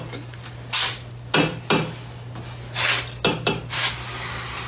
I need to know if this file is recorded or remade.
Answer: recorded